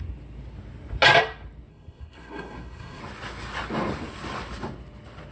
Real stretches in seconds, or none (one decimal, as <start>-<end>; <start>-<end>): 0.0-1.7; 3.0-5.3